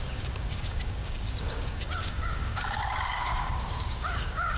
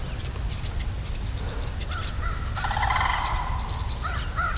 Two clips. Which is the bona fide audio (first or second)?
second